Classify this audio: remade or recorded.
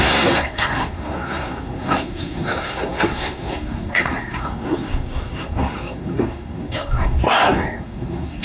remade